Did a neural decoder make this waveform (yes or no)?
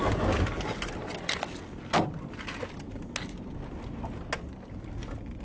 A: no